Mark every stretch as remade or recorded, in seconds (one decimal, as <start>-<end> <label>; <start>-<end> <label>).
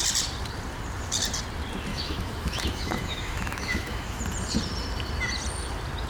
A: 0.0-1.9 recorded; 1.9-4.2 remade; 4.2-6.1 recorded